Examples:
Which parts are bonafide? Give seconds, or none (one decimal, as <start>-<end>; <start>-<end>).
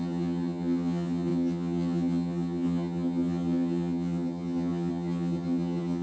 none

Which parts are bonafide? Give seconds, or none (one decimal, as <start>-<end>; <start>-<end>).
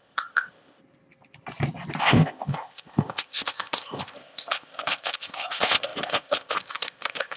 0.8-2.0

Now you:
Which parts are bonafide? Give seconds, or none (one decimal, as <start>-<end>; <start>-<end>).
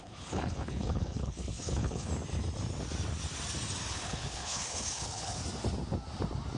2.1-3.9; 5.4-6.6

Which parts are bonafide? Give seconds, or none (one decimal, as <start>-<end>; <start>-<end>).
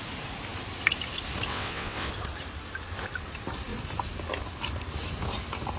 0.0-1.5; 2.1-5.8